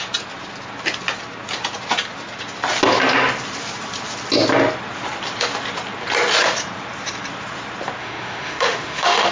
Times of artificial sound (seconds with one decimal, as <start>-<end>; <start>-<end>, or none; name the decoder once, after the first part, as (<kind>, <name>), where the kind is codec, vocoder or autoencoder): 8.0-9.3 (autoencoder, DAC-VAE)